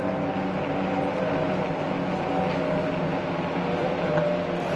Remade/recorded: recorded